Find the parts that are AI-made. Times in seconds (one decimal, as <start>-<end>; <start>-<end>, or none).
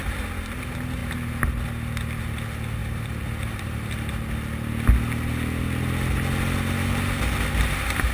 2.8-4.1